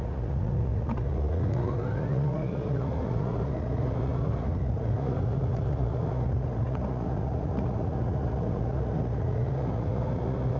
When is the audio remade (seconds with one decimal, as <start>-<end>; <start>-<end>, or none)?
0.0-10.6